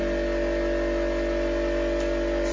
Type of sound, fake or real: real